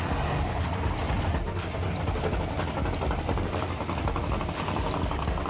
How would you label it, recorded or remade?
recorded